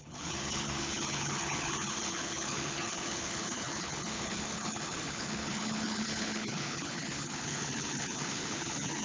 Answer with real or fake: fake